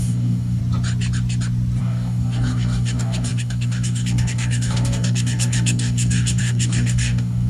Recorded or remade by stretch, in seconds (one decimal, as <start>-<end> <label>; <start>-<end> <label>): 0.0-0.6 remade; 0.6-1.8 recorded; 1.8-7.5 remade

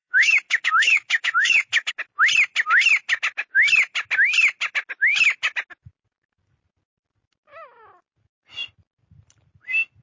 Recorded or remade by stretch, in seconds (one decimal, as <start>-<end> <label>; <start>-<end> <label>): 0.0-1.9 remade; 1.9-10.0 recorded

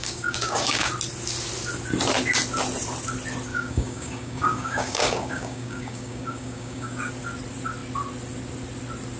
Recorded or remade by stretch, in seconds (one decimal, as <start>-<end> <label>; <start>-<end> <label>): 0.0-0.9 remade; 0.9-3.5 recorded; 3.5-7.1 remade; 7.1-9.2 recorded

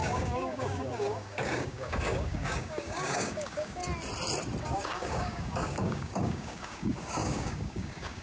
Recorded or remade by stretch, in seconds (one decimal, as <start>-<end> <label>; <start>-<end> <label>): 0.0-3.8 remade; 3.8-4.6 recorded; 4.6-8.2 remade

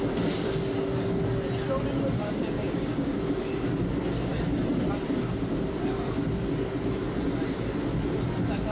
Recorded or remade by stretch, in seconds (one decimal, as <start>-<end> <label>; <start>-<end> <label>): 0.0-2.2 recorded; 2.2-3.2 remade; 3.2-8.7 recorded

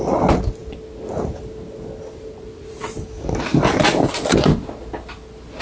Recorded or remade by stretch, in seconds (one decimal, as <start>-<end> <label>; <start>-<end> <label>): 0.0-5.6 recorded

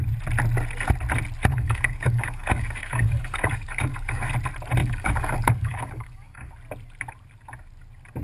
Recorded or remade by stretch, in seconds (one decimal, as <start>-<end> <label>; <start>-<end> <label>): 0.0-1.5 recorded; 1.5-4.3 remade; 4.3-4.8 recorded; 4.8-6.5 remade; 6.5-8.2 recorded

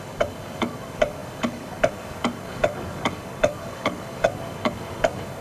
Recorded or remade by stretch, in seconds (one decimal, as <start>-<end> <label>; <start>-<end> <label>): 0.0-5.4 remade